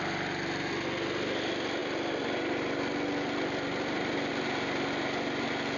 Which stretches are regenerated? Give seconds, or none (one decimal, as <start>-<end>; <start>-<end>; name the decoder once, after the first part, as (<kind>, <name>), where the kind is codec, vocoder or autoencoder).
none